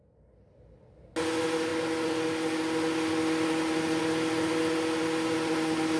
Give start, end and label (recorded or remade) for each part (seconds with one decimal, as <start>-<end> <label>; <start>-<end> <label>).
0.0-6.0 recorded

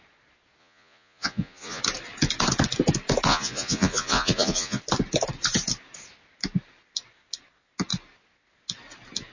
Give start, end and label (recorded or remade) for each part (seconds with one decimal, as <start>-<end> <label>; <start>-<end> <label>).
0.0-0.6 recorded; 0.6-1.8 remade; 1.8-3.3 recorded; 3.3-4.8 remade; 4.8-9.3 recorded